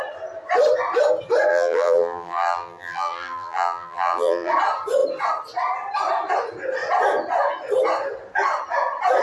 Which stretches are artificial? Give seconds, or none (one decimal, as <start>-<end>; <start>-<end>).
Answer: 1.5-4.5